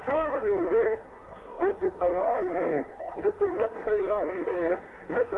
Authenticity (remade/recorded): remade